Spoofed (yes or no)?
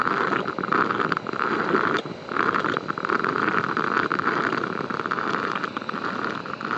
yes